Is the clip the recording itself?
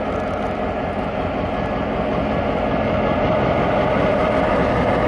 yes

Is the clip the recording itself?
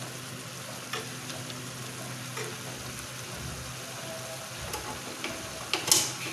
yes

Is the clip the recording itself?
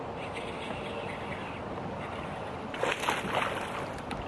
yes